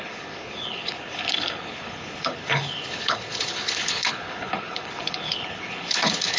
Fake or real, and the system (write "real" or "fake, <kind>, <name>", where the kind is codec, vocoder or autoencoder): fake, codec, HILCodec